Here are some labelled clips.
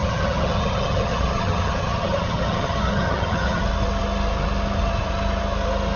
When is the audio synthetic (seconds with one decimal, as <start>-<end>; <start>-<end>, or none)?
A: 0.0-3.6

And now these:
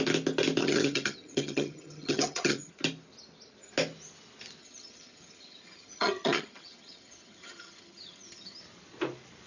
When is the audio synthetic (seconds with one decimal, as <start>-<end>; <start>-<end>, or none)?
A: 0.6-2.7; 4.6-8.6

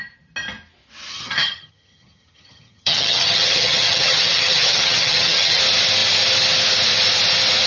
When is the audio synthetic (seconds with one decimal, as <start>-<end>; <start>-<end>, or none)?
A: 1.1-5.6

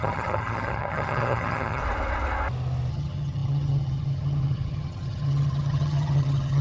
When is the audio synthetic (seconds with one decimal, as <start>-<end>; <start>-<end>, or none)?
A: 0.0-1.8; 2.9-6.6

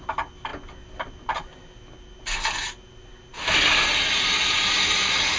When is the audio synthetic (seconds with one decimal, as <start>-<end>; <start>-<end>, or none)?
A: none

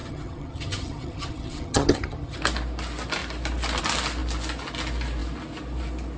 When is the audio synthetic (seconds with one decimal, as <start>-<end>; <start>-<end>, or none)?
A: 0.0-2.4

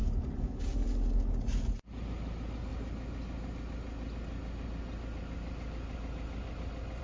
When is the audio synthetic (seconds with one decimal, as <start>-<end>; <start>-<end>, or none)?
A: none

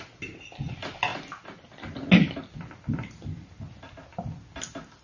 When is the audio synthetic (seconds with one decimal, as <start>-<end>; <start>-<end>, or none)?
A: none